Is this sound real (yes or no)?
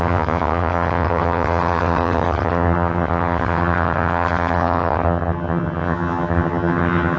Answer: no